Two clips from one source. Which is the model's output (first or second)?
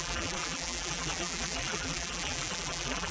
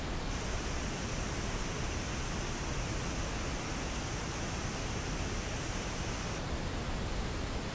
first